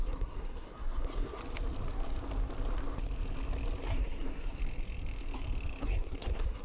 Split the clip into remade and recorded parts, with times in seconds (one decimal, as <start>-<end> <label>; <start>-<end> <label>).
0.0-1.4 remade; 1.4-3.9 recorded; 3.9-4.6 remade; 4.6-5.8 recorded; 5.8-6.6 remade